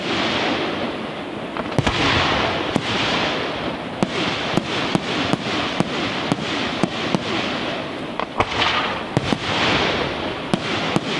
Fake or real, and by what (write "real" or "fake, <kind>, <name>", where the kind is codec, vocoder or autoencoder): real